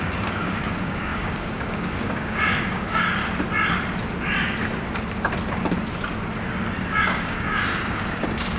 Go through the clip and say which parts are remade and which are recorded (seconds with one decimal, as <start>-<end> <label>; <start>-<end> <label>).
0.0-3.2 remade; 3.2-7.1 recorded; 7.1-8.6 remade